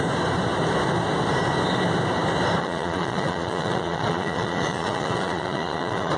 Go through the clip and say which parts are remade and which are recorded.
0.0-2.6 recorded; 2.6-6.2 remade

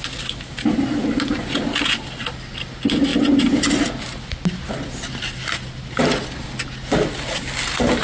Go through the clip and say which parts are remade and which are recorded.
0.0-8.0 recorded

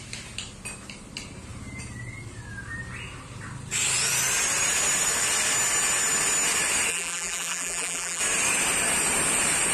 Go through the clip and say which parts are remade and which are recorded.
0.0-6.9 recorded; 6.9-8.2 remade; 8.2-9.7 recorded

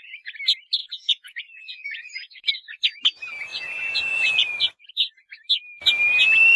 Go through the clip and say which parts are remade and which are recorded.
0.0-0.8 recorded; 0.8-2.5 remade; 2.5-3.5 recorded; 3.5-4.5 remade; 4.5-6.6 recorded

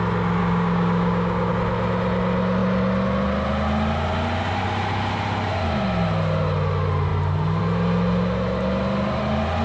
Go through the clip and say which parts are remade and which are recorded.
0.0-0.4 recorded; 0.4-1.5 remade; 1.5-9.6 recorded

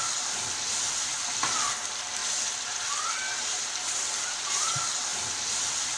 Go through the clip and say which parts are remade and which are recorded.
0.0-5.1 recorded; 5.1-6.0 remade